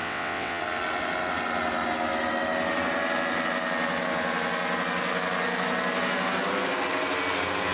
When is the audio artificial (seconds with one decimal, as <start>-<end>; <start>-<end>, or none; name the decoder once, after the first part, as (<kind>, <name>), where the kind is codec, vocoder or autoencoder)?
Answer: 0.0-0.6 (vocoder, WaveNeXt)